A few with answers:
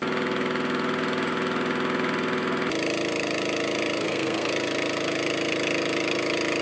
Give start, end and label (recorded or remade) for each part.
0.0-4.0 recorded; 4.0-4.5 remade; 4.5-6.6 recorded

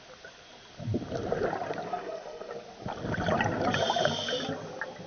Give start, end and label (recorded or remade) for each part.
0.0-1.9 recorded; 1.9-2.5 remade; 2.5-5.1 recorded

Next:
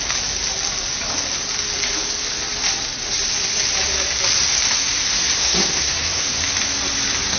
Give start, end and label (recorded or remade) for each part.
0.0-5.4 recorded; 5.4-6.4 remade; 6.4-7.4 recorded